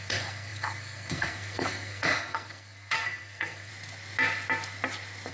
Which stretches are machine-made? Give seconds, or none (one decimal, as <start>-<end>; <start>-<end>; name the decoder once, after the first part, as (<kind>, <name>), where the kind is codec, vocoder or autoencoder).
0.0-3.7 (codec, SNAC)

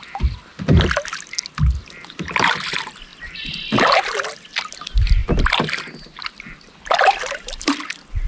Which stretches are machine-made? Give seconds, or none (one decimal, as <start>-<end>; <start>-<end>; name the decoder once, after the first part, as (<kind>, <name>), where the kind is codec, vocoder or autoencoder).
0.0-0.5 (vocoder, BigVGAN v2); 2.1-5.2; 6.3-8.3